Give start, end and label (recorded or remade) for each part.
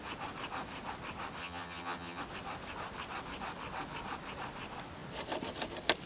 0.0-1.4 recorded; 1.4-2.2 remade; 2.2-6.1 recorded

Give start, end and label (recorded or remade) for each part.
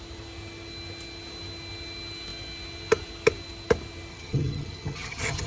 0.0-4.1 recorded; 4.1-5.5 remade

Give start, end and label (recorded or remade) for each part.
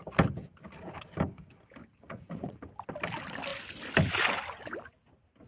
0.0-1.8 recorded; 1.8-2.6 remade; 2.6-5.5 recorded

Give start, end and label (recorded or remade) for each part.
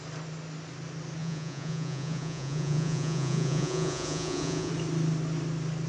0.0-1.2 recorded; 1.2-4.7 remade; 4.7-5.9 recorded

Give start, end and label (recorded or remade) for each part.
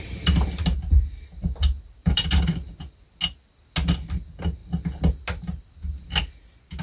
0.0-2.0 recorded; 2.0-2.7 remade; 2.7-6.8 recorded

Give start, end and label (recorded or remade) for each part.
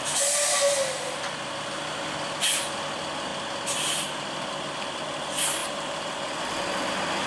0.0-5.6 recorded; 5.6-6.4 remade; 6.4-7.3 recorded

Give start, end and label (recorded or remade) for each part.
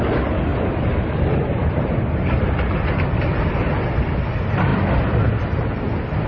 0.0-0.5 recorded; 0.5-2.8 remade; 2.8-6.3 recorded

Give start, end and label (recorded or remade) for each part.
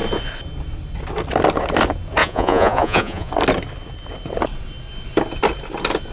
0.0-2.2 recorded; 2.2-3.3 remade; 3.3-6.1 recorded